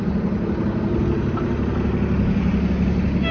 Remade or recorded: recorded